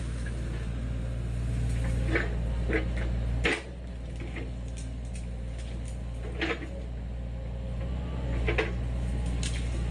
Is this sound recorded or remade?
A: recorded